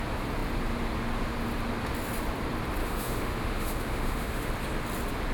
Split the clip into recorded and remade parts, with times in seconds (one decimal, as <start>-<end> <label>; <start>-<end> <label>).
0.0-2.8 recorded; 2.8-4.5 remade; 4.5-5.3 recorded